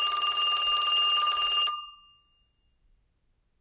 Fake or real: real